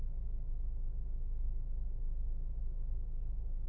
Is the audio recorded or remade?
recorded